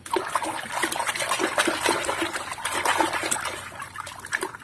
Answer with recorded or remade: recorded